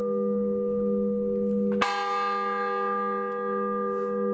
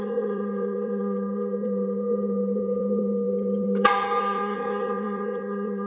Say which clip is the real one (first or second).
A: first